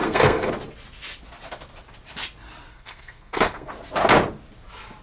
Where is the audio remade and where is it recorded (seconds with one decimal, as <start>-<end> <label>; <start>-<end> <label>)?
0.0-0.5 remade; 0.5-2.7 recorded; 2.7-3.7 remade; 3.7-5.0 recorded

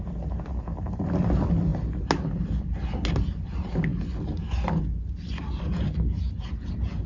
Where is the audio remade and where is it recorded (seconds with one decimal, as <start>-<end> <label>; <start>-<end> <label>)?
0.0-7.1 recorded

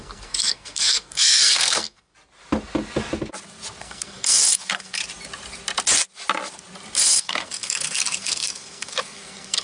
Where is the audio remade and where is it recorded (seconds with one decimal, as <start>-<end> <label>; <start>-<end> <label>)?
0.0-2.1 remade; 2.1-3.8 recorded; 3.8-5.0 remade; 5.0-7.0 recorded; 7.0-9.6 remade

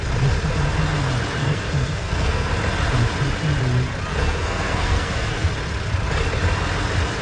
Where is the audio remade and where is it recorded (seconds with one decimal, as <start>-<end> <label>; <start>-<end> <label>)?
0.0-1.4 recorded; 1.4-2.5 remade; 2.5-4.1 recorded; 4.1-5.5 remade; 5.5-7.2 recorded

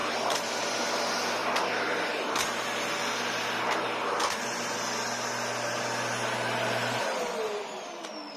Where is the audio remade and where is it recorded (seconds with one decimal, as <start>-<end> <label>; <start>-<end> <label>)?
0.0-8.4 recorded

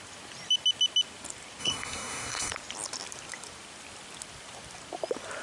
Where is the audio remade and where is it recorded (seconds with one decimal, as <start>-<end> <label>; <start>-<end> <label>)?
0.0-1.6 recorded; 1.6-2.5 remade; 2.5-5.4 recorded

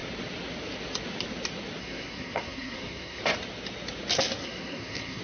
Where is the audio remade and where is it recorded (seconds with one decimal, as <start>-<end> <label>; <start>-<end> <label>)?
0.0-1.8 recorded; 1.8-3.2 remade; 3.2-4.4 recorded; 4.4-5.2 remade

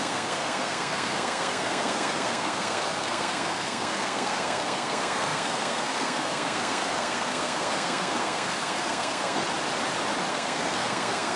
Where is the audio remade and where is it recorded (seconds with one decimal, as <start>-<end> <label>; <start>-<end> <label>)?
0.0-9.4 remade; 9.4-10.3 recorded; 10.3-11.4 remade